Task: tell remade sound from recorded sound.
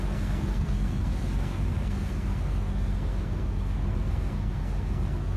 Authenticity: remade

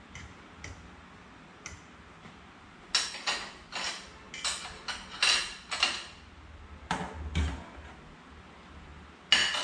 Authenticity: recorded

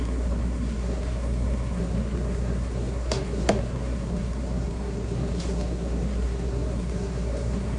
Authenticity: remade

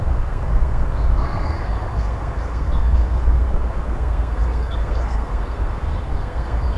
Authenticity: remade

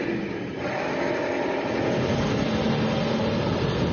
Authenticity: recorded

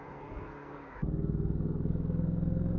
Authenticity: remade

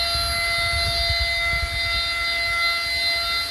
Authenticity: recorded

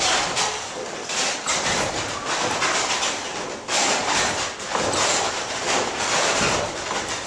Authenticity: recorded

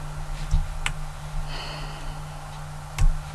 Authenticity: recorded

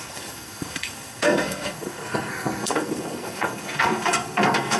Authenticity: remade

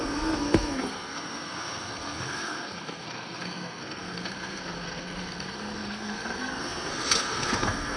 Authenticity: remade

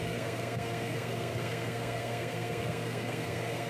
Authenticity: remade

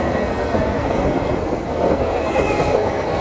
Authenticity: remade